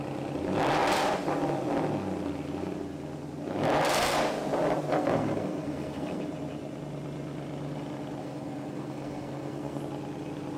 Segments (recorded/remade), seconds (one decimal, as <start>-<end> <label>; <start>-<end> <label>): 0.0-4.9 recorded; 4.9-6.2 remade; 6.2-8.2 recorded; 8.2-9.8 remade; 9.8-10.6 recorded